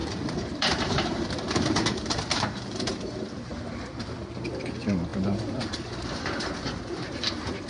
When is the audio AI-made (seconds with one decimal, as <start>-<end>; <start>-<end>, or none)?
0.0-3.5; 4.5-7.7